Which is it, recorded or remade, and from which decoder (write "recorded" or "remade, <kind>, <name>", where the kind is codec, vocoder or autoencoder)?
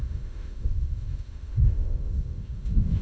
remade, autoencoder, DAC-VAE